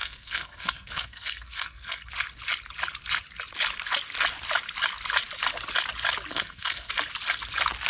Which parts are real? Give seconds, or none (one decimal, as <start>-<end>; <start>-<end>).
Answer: 2.1-6.3; 6.9-7.9